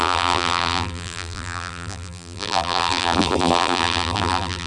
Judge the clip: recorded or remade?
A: remade